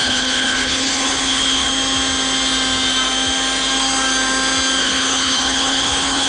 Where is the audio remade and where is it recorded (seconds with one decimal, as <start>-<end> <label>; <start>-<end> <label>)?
0.0-1.7 remade; 1.7-4.8 recorded; 4.8-6.3 remade